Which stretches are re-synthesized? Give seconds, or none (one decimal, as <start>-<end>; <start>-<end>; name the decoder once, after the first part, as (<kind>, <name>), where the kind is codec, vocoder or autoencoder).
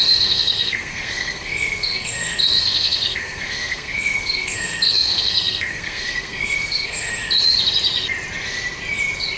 0.0-7.1 (codec, SNAC)